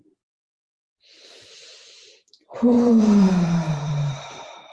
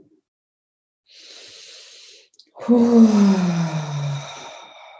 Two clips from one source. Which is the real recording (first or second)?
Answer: second